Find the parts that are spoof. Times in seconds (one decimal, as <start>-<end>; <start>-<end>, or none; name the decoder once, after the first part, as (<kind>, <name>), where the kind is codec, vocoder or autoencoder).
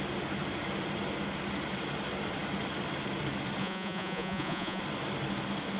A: 3.6-4.8 (vocoder, Vocos)